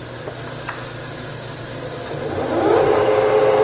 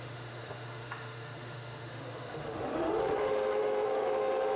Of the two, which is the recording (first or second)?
first